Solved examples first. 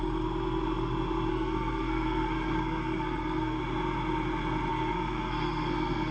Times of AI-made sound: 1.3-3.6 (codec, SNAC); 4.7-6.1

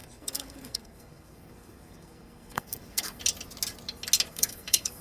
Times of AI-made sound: 0.0-3.2 (codec, SNAC); 4.3-5.0

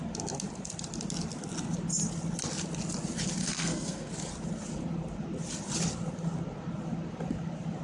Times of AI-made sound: 3.4-4.1 (codec, SNAC)

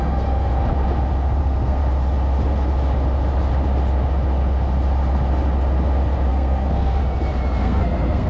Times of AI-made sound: 0.0-0.5 (codec, SNAC); 1.4-1.8; 6.3-7.0; 7.6-8.3

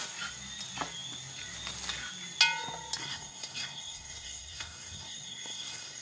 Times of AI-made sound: 3.0-6.0 (codec, SNAC)

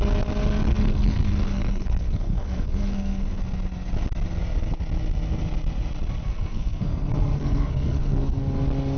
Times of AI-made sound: 0.7-3.4 (codec, SNAC); 6.3-8.4

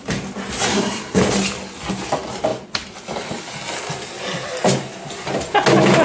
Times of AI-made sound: 0.7-1.2 (codec, SNAC)